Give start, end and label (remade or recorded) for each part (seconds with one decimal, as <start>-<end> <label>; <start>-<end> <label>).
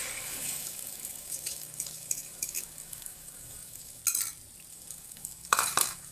0.0-4.0 remade; 4.0-4.7 recorded; 4.7-6.1 remade